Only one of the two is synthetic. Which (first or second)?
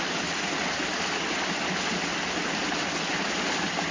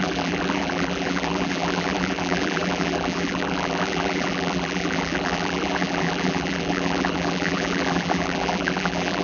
second